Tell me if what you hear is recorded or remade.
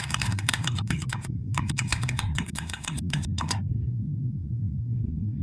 remade